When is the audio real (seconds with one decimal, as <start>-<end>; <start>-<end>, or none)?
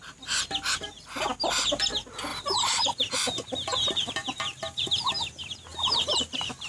0.0-2.3; 5.1-5.7